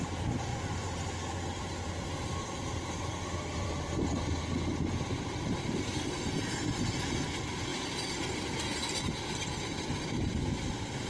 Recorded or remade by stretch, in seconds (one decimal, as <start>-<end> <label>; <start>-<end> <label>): 0.0-11.1 recorded